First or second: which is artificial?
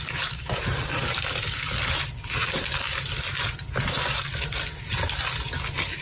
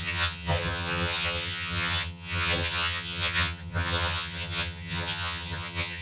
second